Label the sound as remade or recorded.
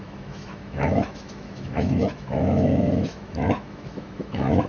remade